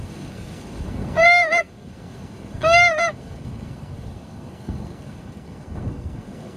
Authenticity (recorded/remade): remade